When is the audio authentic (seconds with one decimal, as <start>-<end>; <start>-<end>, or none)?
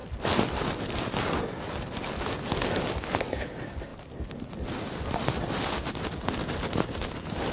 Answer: 0.0-7.5